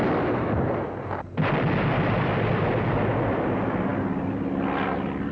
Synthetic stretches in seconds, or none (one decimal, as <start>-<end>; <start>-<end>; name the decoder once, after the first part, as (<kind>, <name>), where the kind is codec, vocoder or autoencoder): none